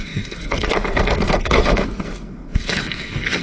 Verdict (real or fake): fake